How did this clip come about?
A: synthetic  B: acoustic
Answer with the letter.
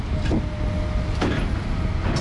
B